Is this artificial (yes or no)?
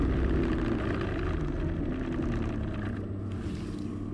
no